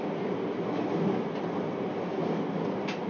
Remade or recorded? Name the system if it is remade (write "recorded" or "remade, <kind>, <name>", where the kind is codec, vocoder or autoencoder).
recorded